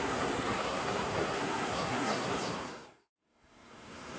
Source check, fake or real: fake